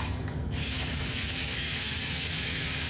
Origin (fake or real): fake